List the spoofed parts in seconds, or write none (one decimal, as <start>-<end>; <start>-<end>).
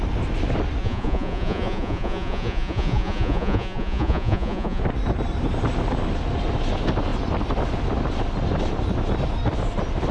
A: 0.8-4.8